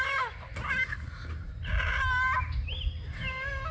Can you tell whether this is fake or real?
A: real